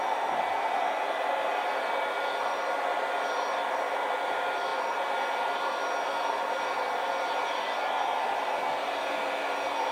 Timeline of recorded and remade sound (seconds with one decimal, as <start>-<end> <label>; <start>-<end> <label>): 0.0-9.9 recorded